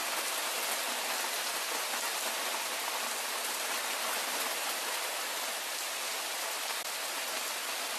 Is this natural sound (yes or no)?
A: yes